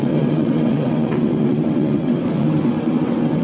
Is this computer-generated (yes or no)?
yes